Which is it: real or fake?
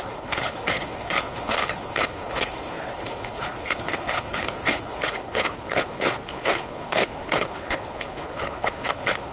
fake